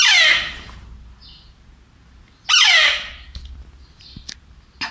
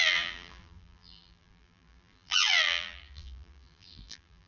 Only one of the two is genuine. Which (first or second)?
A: first